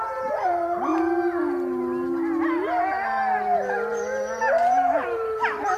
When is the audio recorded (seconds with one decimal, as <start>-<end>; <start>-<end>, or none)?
0.9-4.4